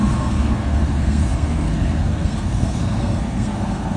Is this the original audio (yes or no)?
no